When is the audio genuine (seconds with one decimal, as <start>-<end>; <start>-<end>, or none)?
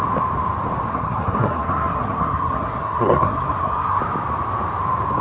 0.0-0.9; 4.0-5.2